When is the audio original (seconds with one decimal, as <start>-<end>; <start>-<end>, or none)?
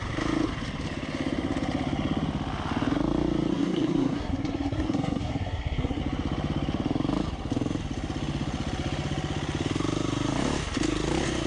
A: 0.0-3.5; 6.0-11.5